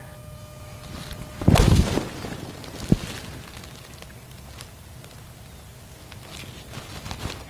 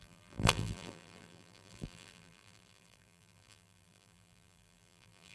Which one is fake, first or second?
second